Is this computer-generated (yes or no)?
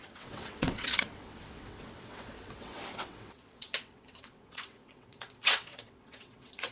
yes